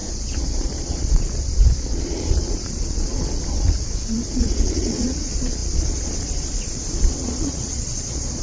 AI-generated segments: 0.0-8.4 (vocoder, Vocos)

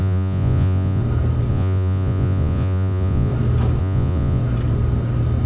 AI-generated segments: 0.0-1.0 (vocoder, Vocos); 1.5-3.3; 3.8-4.4

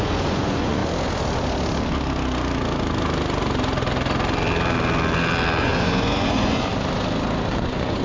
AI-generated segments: 0.0-0.8 (vocoder, Vocos); 5.6-6.7; 7.5-8.0

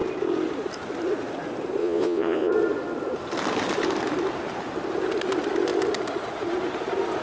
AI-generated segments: 1.8-2.5 (vocoder, Vocos)

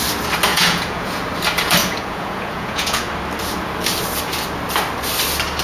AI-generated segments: 0.5-1.2 (vocoder, Vocos); 1.8-3.1

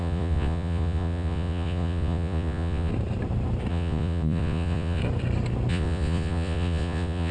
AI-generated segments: 0.0-2.9 (vocoder, Vocos); 3.7-5.0; 5.7-7.3